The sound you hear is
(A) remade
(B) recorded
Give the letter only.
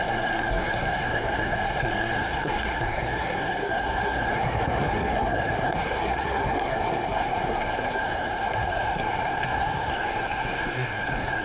A